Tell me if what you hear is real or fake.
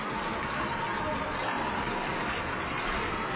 real